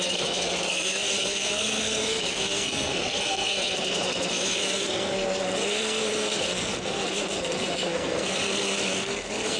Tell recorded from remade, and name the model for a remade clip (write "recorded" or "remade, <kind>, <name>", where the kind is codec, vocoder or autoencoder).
remade, codec, SNAC